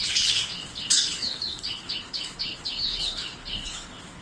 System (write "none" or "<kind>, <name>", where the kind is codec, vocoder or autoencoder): codec, HILCodec